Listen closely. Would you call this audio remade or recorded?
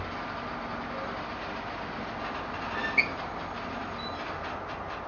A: recorded